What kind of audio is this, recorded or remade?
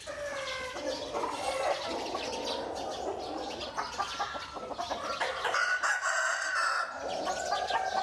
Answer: recorded